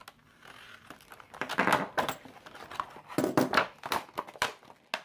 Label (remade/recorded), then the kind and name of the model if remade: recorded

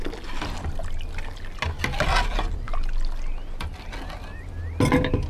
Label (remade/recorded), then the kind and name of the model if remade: recorded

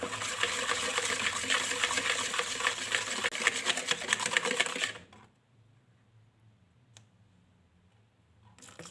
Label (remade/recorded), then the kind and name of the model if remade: recorded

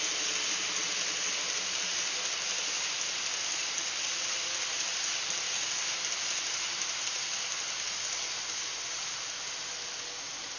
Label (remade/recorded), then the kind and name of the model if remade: recorded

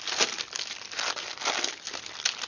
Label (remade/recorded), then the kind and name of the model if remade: recorded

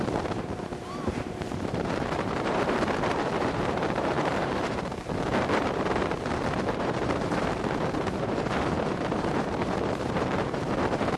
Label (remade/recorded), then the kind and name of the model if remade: remade, vocoder, BigVGAN v2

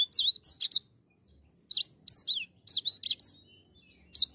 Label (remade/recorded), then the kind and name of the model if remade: recorded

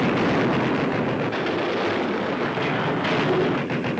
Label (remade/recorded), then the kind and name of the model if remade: recorded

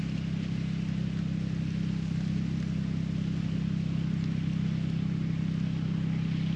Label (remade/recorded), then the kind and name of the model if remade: recorded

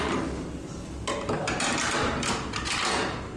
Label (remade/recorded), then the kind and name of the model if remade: recorded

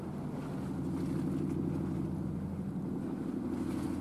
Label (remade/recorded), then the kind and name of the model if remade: recorded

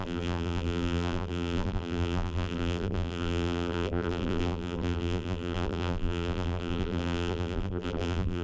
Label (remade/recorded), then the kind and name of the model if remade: remade, vocoder, BigVGAN v2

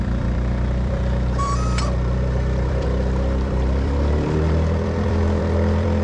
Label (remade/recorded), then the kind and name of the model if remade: remade, vocoder, BigVGAN v2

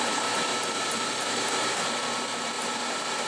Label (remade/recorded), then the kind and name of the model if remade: remade, vocoder, BigVGAN v2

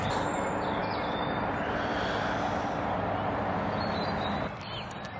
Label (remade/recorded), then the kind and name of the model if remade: recorded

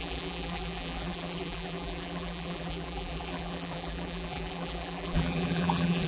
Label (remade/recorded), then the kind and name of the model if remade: remade, vocoder, BigVGAN v2